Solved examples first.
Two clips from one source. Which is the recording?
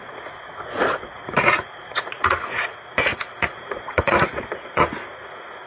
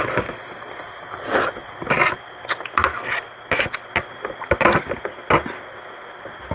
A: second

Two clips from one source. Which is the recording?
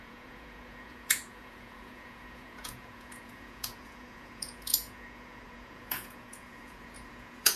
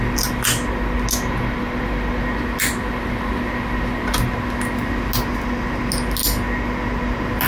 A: second